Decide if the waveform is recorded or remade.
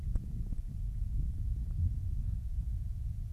remade